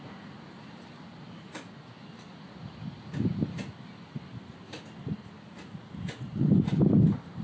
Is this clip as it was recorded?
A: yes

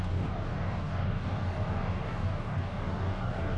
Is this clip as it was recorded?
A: no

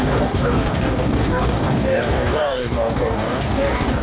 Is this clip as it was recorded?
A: no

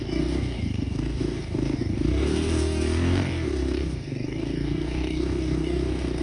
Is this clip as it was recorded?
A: no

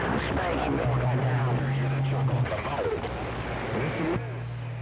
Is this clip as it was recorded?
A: yes